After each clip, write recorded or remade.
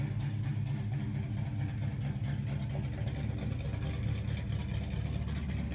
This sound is recorded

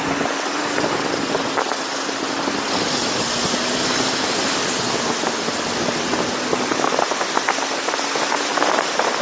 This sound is recorded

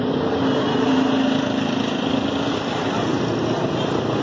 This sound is recorded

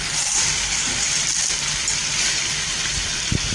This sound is recorded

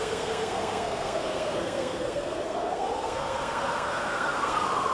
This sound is remade